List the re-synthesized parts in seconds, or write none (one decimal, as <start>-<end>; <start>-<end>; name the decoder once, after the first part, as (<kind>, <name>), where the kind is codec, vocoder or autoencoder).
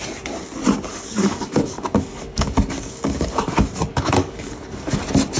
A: 0.9-3.5 (codec, DAC); 3.9-5.0